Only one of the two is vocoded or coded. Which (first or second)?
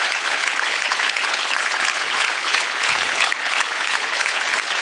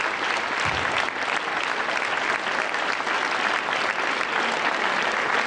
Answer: first